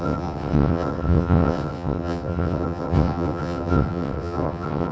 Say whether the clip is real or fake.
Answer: fake